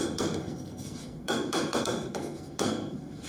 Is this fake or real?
fake